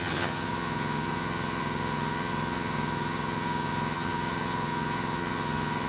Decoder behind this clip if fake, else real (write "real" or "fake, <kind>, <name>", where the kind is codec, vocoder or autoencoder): fake, vocoder, HiFi-GAN